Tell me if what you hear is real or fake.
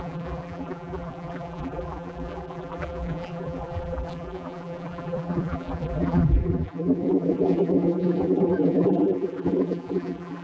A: fake